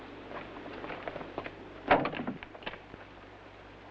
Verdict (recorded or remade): recorded